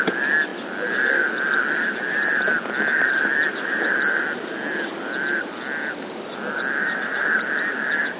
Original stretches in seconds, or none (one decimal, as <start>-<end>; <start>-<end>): 0.0-8.2